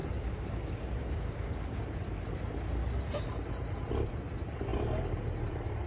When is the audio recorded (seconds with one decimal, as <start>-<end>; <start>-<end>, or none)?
1.8-5.9